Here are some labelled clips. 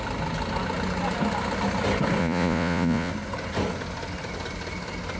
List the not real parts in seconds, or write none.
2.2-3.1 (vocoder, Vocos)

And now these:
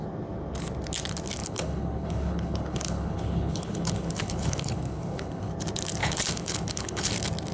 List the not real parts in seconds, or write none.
1.4-5.5 (codec, HILCodec); 6.0-7.1

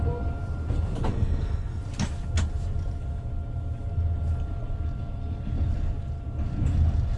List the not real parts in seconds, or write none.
1.1-1.8 (codec, SNAC)

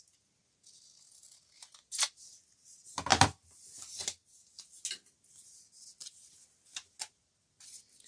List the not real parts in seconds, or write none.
none

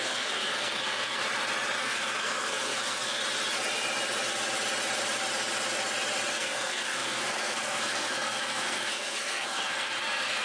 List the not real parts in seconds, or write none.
0.0-1.2 (codec, SNAC); 1.8-3.2; 6.3-10.4

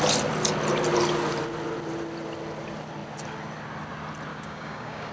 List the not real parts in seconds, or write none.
4.3-5.1 (codec, DAC)